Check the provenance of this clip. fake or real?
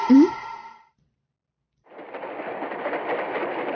fake